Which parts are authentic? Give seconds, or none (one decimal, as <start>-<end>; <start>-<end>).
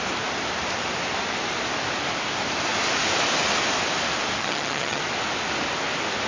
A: 0.0-4.4; 5.0-6.3